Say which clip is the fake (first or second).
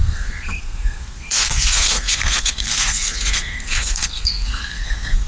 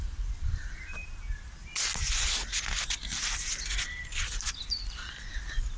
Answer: first